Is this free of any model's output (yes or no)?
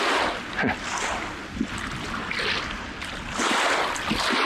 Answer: yes